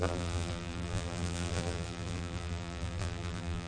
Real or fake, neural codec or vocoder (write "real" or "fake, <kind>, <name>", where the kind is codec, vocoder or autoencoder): fake, vocoder, BigVGAN v2